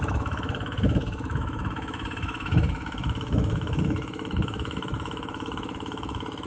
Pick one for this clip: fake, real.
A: fake